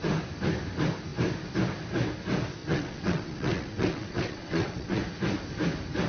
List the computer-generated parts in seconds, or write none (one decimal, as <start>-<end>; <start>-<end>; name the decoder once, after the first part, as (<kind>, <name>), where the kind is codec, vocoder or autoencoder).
2.6-5.0 (vocoder, WaveNeXt)